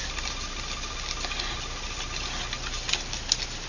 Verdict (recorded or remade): recorded